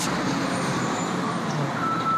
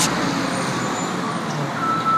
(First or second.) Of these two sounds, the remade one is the first